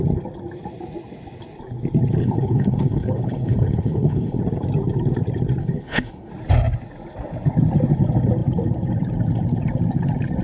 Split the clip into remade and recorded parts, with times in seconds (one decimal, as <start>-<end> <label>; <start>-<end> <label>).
0.0-2.2 recorded; 2.2-4.4 remade; 4.4-5.6 recorded; 5.6-6.3 remade; 6.3-10.4 recorded